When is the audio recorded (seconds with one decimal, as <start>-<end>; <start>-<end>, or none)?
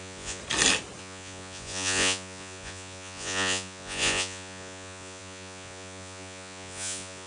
0.4-1.0